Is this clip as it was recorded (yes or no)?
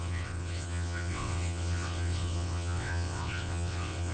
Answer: no